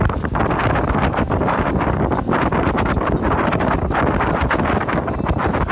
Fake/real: fake